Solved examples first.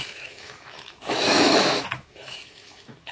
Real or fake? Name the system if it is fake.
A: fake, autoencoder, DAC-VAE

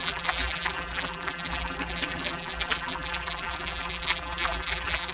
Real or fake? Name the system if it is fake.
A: fake, vocoder, BigVGAN v2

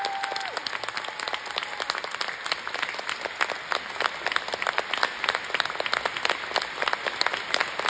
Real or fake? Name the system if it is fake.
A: real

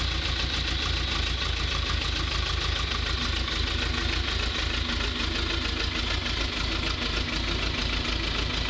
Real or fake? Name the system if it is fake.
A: real